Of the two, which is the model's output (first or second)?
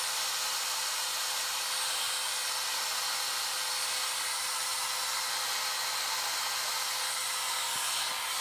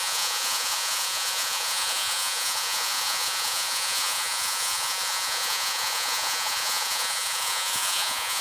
second